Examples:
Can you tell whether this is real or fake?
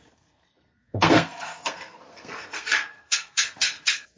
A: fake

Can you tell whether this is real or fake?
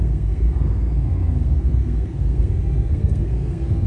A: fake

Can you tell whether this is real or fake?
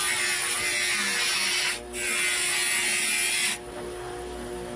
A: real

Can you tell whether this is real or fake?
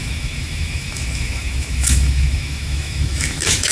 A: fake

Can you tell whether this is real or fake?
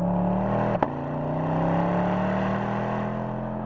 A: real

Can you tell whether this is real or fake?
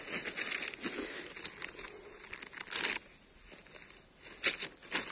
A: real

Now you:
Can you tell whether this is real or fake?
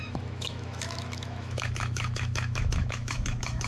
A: fake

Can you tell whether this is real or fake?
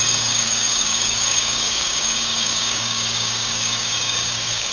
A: fake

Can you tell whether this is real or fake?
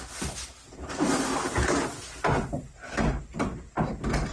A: real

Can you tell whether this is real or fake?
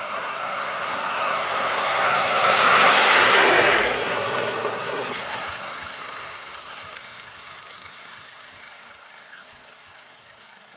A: fake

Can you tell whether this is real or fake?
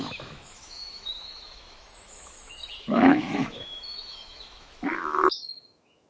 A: fake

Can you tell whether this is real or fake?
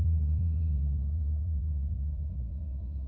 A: fake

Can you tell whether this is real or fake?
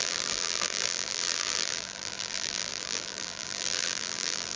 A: fake